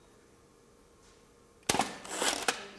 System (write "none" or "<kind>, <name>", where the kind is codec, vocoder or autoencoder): none